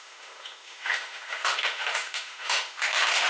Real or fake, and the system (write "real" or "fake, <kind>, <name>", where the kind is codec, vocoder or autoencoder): fake, autoencoder, DAC-VAE